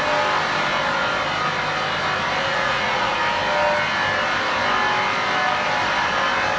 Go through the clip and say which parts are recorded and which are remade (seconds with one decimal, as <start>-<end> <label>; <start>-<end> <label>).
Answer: 0.0-2.5 recorded; 2.5-3.2 remade; 3.2-6.6 recorded